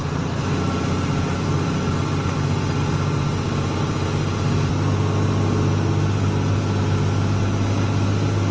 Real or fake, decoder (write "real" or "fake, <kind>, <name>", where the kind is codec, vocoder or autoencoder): real